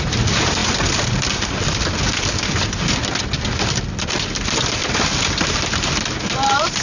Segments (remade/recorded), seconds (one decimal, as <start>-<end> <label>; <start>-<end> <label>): 0.0-6.8 recorded